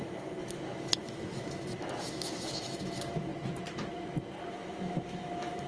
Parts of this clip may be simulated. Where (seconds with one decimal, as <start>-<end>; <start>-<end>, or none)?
0.0-3.3; 4.5-5.7